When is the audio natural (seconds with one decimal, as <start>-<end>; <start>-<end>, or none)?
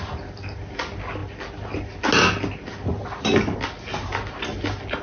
0.0-5.0